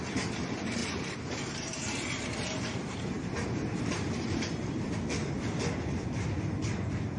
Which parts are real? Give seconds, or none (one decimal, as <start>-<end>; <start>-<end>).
0.0-0.8; 4.9-7.2